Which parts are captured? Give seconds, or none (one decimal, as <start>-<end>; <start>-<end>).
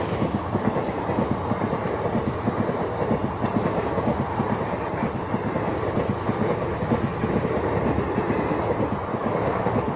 0.0-9.1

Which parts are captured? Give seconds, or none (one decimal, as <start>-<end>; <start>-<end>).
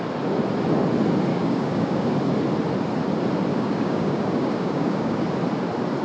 0.0-1.3; 2.1-3.5; 5.2-6.0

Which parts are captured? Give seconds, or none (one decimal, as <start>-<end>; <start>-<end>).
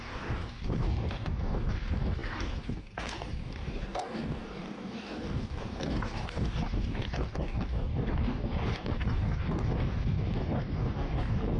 none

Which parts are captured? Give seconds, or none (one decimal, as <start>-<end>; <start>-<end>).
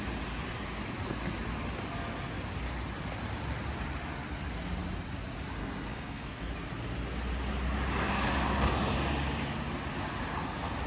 0.0-5.6; 6.5-10.9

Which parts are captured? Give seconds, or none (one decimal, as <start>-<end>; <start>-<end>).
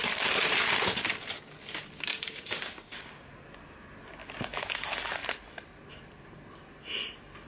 0.0-2.1; 3.3-4.2; 4.8-7.5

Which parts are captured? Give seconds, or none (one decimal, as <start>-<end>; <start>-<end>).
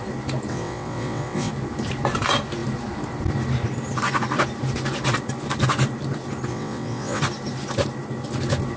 0.0-0.5; 1.5-6.5; 7.2-8.8